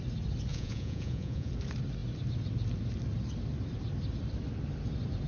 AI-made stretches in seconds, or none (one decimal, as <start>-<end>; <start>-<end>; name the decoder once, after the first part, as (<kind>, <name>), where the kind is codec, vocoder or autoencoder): 0.5-1.5 (vocoder, Vocos)